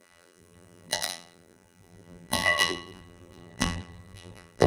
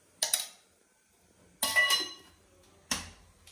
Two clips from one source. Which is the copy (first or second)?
first